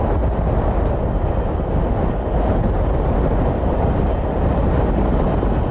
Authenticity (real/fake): real